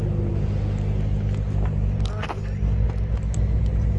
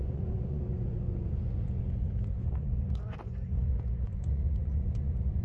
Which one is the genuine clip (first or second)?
first